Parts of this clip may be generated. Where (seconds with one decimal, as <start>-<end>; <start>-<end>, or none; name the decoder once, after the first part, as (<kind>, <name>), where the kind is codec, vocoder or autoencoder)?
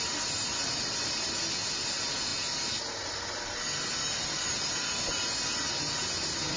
none